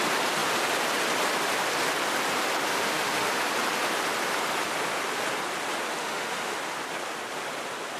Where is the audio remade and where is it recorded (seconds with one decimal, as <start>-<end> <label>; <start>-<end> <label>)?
0.0-2.7 recorded; 2.7-3.3 remade; 3.3-6.0 recorded; 6.0-6.6 remade; 6.6-8.0 recorded